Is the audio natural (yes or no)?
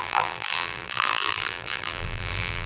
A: no